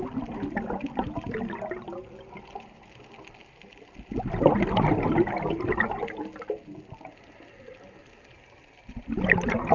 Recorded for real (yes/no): yes